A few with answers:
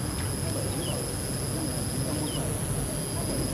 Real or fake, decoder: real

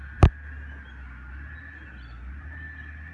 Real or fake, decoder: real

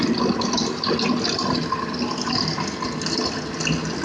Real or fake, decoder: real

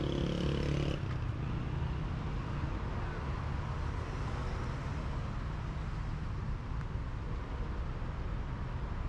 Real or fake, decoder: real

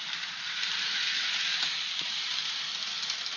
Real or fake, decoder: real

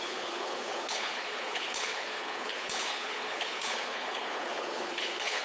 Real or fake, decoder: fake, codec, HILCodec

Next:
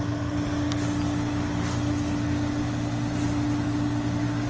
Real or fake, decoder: real